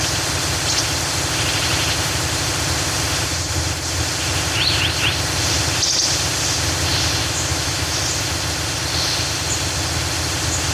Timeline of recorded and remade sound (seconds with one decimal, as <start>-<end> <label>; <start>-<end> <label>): 0.0-7.2 recorded; 7.2-8.0 remade; 8.0-10.7 recorded